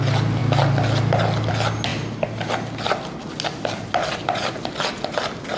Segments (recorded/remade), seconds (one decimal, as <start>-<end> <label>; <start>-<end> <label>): 0.0-5.6 recorded